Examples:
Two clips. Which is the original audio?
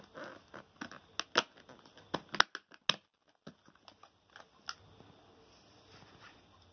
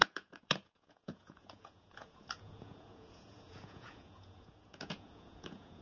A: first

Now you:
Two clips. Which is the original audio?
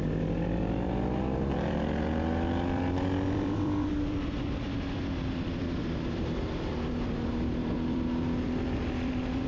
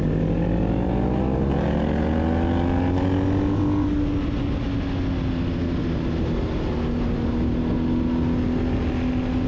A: second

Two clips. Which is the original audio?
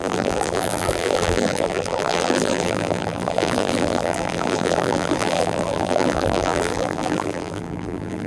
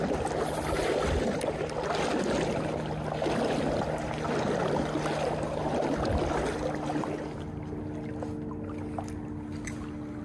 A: second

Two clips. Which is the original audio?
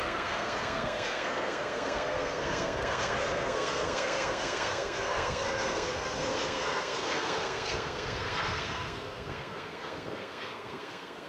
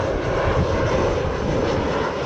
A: second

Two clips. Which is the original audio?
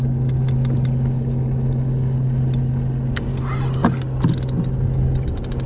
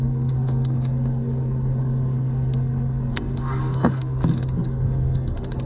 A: first